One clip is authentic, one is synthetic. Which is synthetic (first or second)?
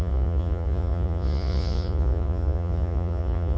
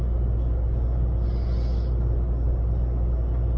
first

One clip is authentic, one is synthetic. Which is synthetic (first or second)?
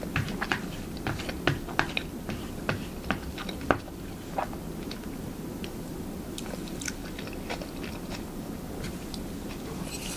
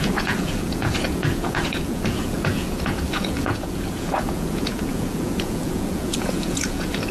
second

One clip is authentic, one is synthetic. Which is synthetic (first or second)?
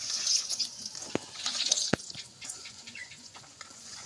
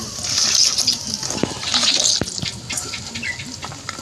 first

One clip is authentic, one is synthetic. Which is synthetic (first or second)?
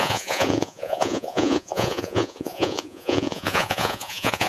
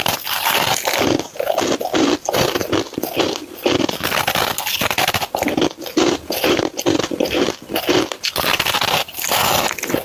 first